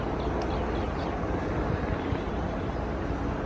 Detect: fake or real real